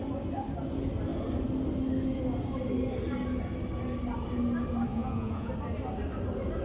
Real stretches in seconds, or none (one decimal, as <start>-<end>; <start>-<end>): 0.0-4.9; 5.5-6.6